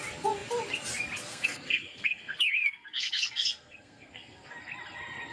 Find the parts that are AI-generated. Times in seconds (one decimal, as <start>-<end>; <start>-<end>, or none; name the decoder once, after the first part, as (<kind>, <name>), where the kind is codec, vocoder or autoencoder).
1.3-4.5 (codec, SNAC)